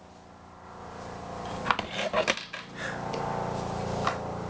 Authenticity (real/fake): real